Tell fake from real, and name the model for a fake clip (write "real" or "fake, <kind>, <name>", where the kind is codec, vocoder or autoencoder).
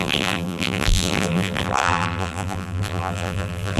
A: fake, vocoder, BigVGAN v2